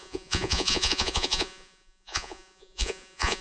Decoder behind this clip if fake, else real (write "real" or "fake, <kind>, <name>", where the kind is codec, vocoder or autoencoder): fake, vocoder, Vocos